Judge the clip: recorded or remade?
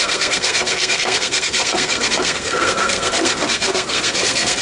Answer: remade